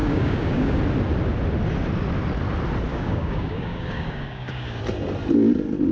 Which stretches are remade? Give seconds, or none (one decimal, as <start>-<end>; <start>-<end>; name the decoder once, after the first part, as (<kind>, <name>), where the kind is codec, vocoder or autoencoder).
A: 0.0-0.8 (codec, DAC); 2.9-4.8